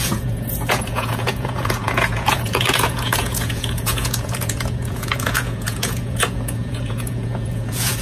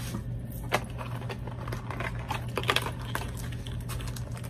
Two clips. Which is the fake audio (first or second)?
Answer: first